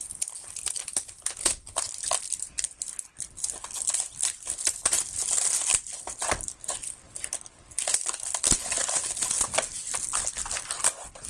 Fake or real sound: real